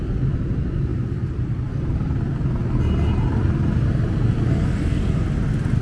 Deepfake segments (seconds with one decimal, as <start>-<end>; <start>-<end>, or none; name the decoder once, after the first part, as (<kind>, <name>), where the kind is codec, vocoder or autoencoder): none